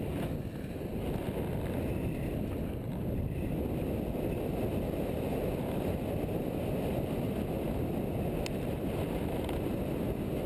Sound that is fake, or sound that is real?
real